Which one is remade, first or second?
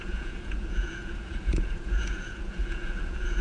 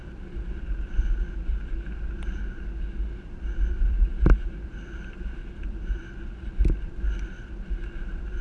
first